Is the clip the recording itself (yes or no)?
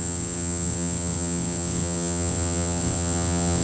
no